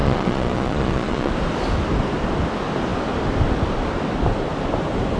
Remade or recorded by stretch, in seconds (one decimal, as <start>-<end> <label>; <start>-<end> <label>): 0.0-1.3 remade; 1.3-5.2 recorded